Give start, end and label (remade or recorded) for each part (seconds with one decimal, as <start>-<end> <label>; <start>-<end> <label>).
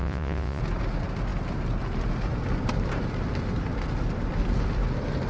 0.0-0.6 remade; 0.6-5.3 recorded